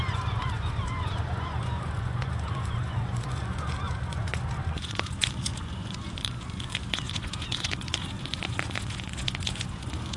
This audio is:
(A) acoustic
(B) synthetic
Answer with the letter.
B